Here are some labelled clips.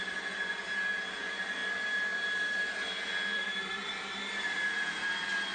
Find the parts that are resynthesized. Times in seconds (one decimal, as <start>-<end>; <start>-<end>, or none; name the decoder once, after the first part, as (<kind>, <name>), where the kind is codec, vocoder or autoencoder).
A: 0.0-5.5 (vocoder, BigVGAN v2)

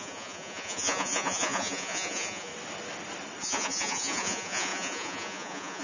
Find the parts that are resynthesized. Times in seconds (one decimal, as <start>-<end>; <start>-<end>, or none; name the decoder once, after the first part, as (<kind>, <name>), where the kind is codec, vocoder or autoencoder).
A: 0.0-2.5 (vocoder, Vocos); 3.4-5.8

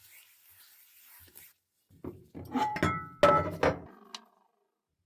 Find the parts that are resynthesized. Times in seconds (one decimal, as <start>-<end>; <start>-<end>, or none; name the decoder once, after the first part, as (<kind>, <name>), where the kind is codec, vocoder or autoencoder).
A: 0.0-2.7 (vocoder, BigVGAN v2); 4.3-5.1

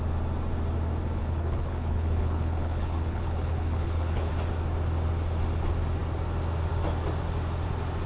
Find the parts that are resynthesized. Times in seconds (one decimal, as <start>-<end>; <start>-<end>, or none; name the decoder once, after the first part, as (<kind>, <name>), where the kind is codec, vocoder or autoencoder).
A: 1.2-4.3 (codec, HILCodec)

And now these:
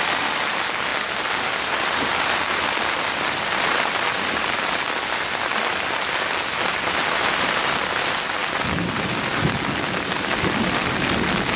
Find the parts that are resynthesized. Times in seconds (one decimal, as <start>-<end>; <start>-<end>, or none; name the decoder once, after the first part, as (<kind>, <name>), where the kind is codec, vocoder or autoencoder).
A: none

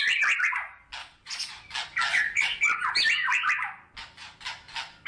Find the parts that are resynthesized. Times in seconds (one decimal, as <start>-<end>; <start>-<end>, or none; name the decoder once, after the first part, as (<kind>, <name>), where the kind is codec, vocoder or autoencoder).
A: 1.0-1.5 (vocoder, Vocos); 2.1-2.6